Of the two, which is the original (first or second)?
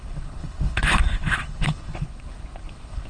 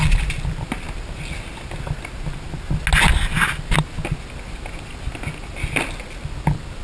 second